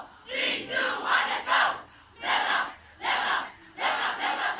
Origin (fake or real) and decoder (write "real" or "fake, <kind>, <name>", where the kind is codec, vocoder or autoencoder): real